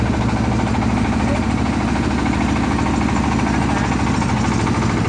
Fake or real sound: real